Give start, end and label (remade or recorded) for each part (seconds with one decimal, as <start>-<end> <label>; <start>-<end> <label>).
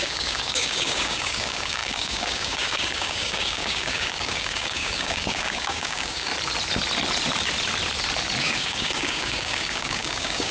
0.0-6.3 remade; 6.3-8.4 recorded; 8.4-10.5 remade